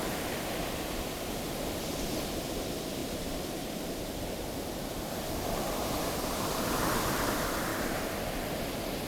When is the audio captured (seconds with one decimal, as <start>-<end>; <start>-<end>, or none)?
0.0-3.0; 6.0-7.7; 8.2-9.1